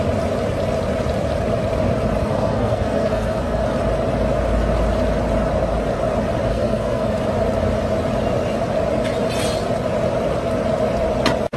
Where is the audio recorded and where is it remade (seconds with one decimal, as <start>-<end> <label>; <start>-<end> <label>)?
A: 0.0-2.2 recorded; 2.2-3.6 remade; 3.6-6.5 recorded; 6.5-7.2 remade; 7.2-11.6 recorded